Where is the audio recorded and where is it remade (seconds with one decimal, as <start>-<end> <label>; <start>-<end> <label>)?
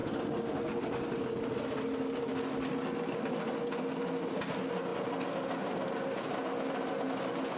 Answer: 0.0-7.6 recorded